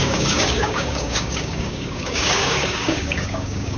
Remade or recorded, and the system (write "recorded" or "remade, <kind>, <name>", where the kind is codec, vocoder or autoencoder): remade, codec, DAC